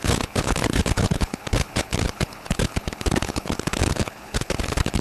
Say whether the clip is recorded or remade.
remade